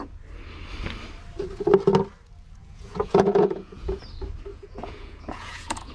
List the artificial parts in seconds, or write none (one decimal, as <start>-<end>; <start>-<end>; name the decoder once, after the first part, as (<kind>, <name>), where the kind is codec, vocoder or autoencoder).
2.6-4.0 (vocoder, Vocos); 4.5-5.9